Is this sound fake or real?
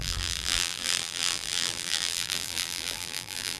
fake